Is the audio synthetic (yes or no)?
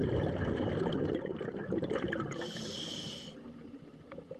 yes